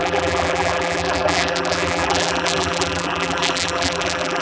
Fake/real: fake